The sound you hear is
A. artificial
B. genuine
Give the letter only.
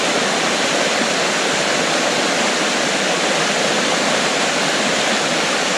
B